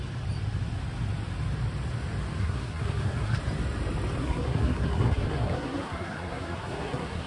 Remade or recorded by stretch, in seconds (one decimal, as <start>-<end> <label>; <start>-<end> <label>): 0.0-2.4 recorded; 2.4-3.4 remade; 3.4-4.2 recorded; 4.2-7.3 remade